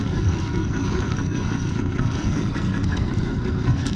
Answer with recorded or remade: remade